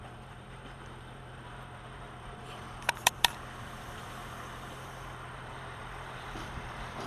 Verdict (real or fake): fake